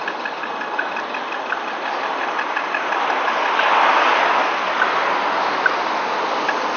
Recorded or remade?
recorded